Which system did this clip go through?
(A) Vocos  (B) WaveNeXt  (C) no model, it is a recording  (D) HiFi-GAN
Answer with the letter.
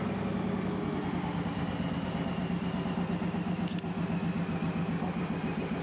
C